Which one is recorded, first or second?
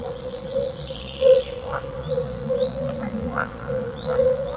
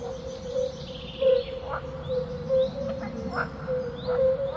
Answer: second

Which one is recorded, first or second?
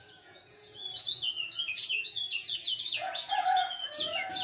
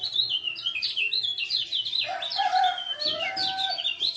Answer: second